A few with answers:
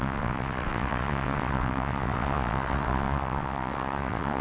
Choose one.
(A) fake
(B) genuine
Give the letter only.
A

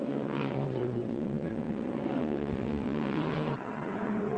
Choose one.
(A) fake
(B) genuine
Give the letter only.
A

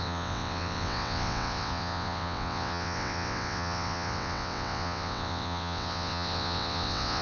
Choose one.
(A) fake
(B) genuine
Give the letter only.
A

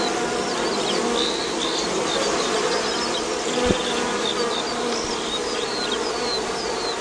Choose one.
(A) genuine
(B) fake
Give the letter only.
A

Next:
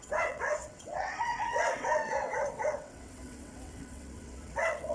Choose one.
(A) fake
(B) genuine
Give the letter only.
A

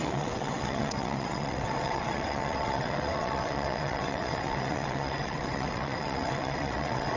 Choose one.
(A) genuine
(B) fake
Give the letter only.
B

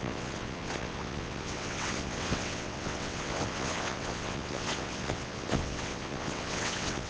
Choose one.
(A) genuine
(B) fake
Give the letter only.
B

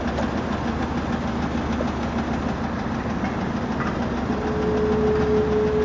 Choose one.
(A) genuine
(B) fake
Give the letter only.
A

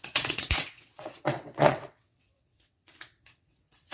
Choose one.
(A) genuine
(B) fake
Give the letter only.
B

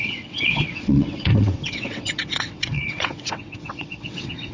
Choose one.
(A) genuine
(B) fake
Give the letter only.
B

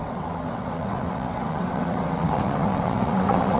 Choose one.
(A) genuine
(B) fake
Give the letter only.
B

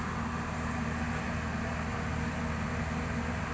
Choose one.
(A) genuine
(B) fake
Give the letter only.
A